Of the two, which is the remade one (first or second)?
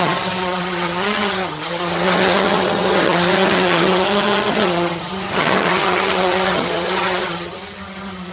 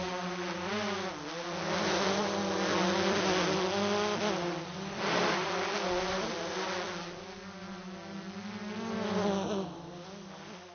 first